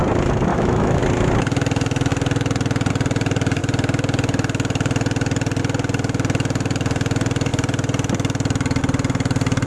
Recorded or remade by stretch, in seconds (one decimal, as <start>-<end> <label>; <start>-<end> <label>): 0.0-0.5 recorded; 0.5-1.0 remade; 1.0-9.7 recorded